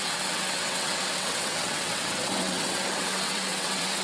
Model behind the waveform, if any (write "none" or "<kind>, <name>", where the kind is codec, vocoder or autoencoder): vocoder, WaveNeXt